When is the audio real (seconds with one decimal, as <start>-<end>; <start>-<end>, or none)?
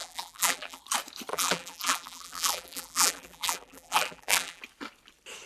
0.8-1.3; 4.6-5.5